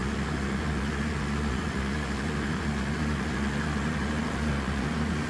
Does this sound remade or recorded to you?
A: remade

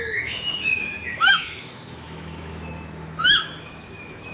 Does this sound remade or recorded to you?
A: remade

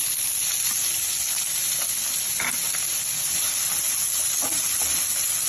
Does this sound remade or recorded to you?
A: recorded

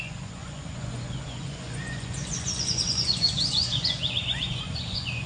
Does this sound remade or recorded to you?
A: remade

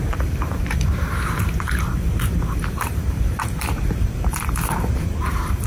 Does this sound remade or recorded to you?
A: remade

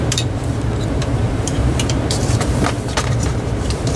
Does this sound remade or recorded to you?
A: remade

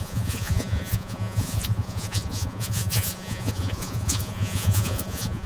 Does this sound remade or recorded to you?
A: remade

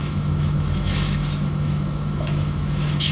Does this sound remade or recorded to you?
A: remade